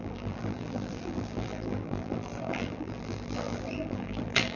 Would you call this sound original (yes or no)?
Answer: no